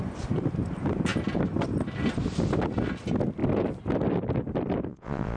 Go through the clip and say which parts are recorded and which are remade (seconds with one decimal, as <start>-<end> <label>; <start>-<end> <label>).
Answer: 0.0-4.9 recorded; 4.9-5.4 remade